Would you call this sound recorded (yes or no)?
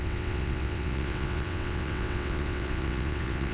no